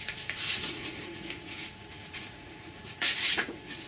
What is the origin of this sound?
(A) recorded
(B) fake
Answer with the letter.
B